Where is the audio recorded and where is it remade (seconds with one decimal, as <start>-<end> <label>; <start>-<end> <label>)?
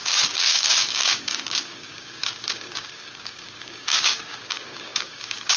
0.0-5.6 remade